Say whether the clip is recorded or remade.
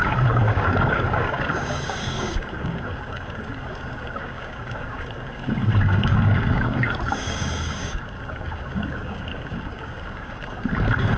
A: remade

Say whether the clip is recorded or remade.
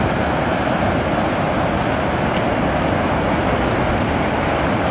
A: recorded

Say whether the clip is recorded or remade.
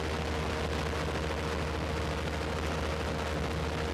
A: recorded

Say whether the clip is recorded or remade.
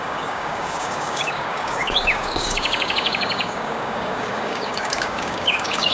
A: remade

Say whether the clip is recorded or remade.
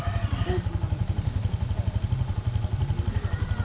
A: recorded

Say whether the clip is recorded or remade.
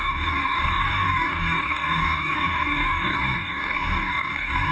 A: remade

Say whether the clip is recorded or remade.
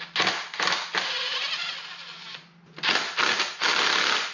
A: recorded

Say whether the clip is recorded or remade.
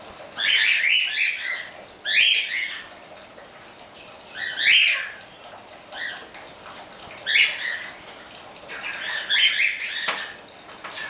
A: recorded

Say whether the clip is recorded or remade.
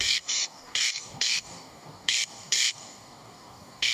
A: remade